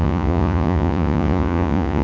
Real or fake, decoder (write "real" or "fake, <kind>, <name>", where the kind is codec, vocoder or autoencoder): fake, vocoder, Vocos